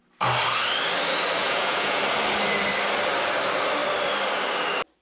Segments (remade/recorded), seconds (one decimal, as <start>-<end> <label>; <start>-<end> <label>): 0.0-1.4 recorded; 1.4-2.0 remade; 2.0-5.0 recorded

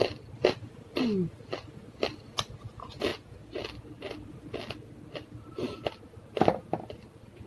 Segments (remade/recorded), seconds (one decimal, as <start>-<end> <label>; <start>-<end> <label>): 0.0-7.5 recorded

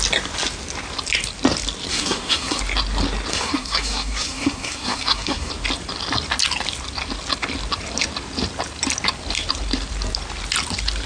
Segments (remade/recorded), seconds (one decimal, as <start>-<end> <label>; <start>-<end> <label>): 0.0-1.9 recorded; 1.9-2.6 remade; 2.6-3.3 recorded; 3.3-5.5 remade; 5.5-11.1 recorded

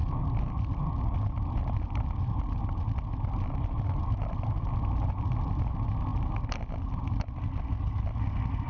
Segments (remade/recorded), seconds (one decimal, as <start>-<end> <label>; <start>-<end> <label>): 0.0-8.7 recorded

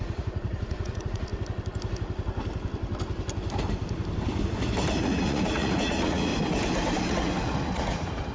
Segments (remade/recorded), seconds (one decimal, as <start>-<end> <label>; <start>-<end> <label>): 0.0-1.3 remade; 1.3-5.0 recorded; 5.0-6.3 remade; 6.3-7.1 recorded; 7.1-8.3 remade

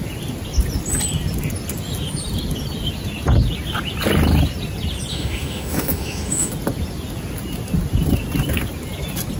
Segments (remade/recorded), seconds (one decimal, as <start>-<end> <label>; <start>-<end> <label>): 0.0-5.1 recorded; 5.1-6.5 remade; 6.5-9.4 recorded

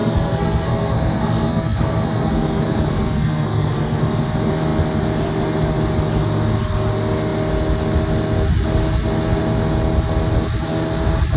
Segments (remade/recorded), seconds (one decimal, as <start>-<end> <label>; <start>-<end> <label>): 0.0-4.0 remade; 4.0-11.4 recorded

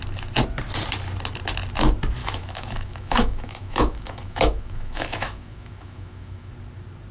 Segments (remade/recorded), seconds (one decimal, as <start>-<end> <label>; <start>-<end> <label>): 0.0-2.2 recorded; 2.2-6.5 remade; 6.5-7.1 recorded